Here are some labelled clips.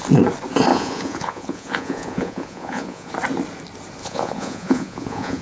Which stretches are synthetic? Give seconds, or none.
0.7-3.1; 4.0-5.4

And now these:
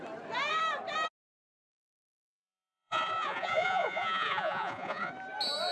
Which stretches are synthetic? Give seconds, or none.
1.7-5.1

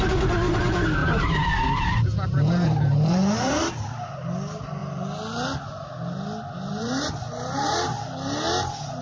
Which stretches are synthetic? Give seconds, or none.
1.0-4.1

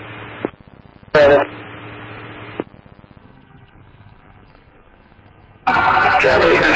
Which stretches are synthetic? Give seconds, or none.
3.2-6.8

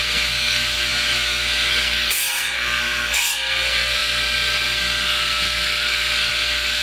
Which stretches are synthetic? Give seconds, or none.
0.0-6.8

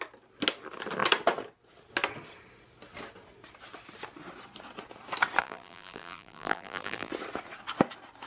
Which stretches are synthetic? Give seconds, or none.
5.4-7.1